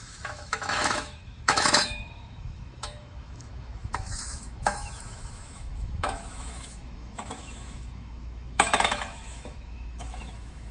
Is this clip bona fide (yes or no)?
no